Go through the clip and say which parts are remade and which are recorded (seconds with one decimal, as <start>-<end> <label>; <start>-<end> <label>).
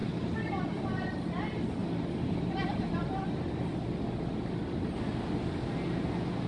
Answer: 0.0-0.8 remade; 0.8-1.8 recorded; 1.8-2.9 remade; 2.9-6.5 recorded